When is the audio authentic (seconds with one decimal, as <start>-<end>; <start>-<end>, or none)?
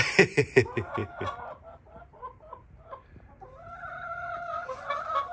none